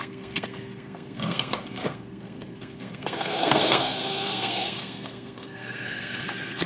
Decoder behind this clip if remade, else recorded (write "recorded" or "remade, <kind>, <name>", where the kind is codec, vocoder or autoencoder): remade, codec, SNAC